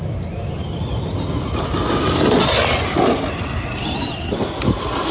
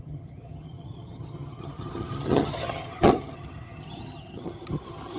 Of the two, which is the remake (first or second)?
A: second